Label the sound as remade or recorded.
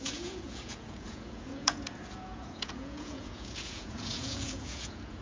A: remade